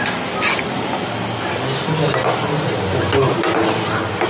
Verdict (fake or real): real